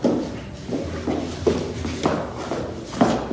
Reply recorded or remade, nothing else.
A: recorded